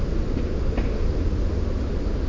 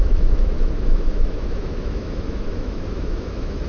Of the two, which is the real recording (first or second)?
first